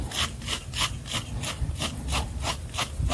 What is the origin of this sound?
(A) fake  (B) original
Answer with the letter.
B